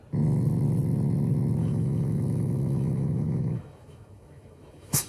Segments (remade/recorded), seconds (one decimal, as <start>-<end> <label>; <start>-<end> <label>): 0.0-1.6 recorded; 1.6-5.1 remade